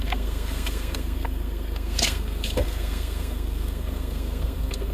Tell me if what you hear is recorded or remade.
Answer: remade